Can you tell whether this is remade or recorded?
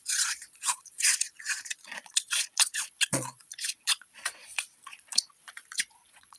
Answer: remade